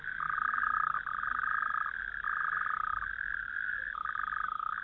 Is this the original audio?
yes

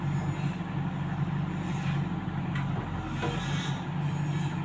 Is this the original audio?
yes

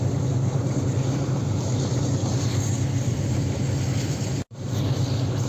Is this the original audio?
no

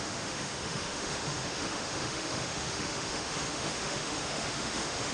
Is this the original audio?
no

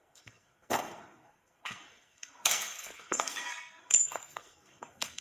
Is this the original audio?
no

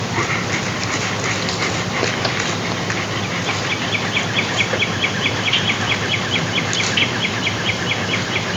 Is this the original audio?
yes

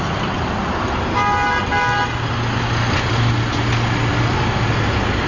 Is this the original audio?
yes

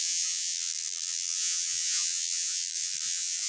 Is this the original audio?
no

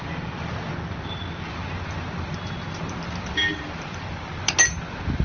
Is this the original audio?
yes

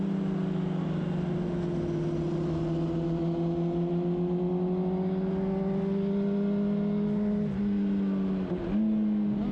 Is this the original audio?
yes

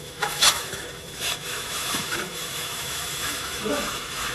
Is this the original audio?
no